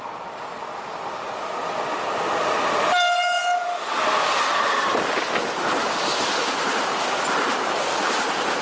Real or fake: real